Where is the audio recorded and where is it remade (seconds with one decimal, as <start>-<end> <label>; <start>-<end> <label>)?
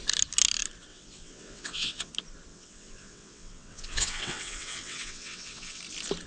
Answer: 0.0-0.9 recorded; 0.9-2.1 remade; 2.1-2.5 recorded; 2.5-5.8 remade; 5.8-6.3 recorded